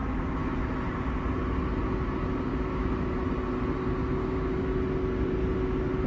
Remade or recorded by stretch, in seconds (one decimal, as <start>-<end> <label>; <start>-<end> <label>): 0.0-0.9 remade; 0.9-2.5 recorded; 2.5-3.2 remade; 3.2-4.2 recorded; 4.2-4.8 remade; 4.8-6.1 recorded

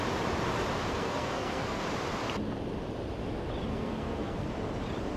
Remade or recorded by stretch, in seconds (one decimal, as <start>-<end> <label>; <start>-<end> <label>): 0.0-0.9 recorded; 0.9-1.8 remade; 1.8-3.7 recorded; 3.7-4.5 remade; 4.5-5.2 recorded

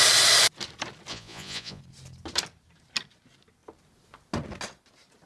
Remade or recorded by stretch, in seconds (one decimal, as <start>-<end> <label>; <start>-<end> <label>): 0.0-1.1 recorded; 1.1-1.8 remade; 1.8-5.3 recorded